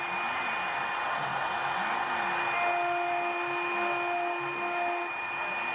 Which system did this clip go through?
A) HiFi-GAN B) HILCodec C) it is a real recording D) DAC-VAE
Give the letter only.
C